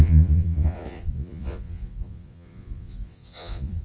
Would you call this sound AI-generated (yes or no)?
yes